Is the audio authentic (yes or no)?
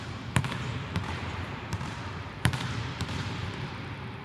no